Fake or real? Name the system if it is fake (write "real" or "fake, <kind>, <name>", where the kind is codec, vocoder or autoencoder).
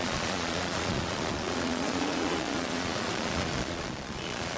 fake, vocoder, Vocos